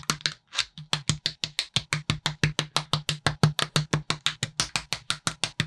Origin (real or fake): real